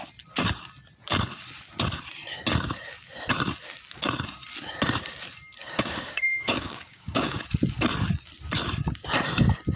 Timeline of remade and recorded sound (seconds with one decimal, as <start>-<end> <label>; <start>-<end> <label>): 0.0-5.6 recorded; 5.6-7.4 remade; 7.4-9.8 recorded

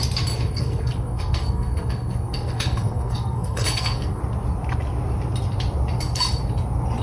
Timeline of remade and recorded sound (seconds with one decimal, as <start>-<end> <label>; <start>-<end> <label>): 0.0-0.5 recorded; 0.5-4.2 remade; 4.2-7.0 recorded

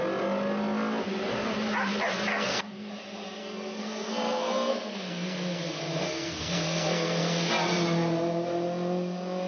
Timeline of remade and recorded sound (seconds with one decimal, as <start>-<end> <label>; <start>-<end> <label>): 0.0-2.3 recorded; 2.3-2.9 remade; 2.9-3.4 recorded; 3.4-7.5 remade; 7.5-9.5 recorded

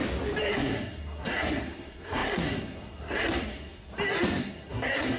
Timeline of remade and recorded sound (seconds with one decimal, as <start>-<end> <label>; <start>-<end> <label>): 0.0-0.5 recorded; 0.5-3.9 remade; 3.9-4.4 recorded; 4.4-5.2 remade

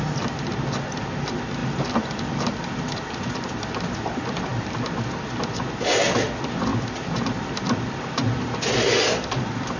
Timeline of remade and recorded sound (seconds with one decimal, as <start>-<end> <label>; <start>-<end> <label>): 0.0-1.6 recorded; 1.6-3.2 remade; 3.2-6.7 recorded; 6.7-8.5 remade; 8.5-9.8 recorded

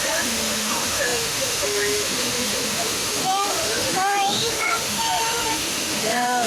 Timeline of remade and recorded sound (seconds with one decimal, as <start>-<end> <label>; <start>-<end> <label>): 0.0-6.5 remade

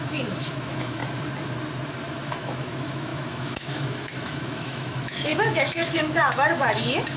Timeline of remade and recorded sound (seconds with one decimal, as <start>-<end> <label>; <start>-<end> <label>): 0.0-1.0 remade; 1.0-2.1 recorded; 2.1-7.2 remade

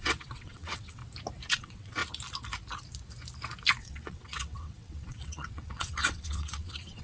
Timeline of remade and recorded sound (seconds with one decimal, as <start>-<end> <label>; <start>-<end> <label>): 0.0-1.0 remade; 1.0-1.5 recorded; 1.5-2.0 remade; 2.0-3.8 recorded; 3.8-7.0 remade